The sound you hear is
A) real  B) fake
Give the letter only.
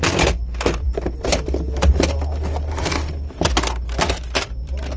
A